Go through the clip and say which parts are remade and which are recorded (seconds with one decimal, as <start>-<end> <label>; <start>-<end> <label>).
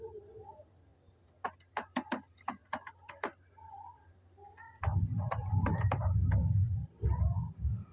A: 0.0-7.9 recorded